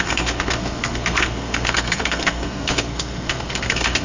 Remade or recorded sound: remade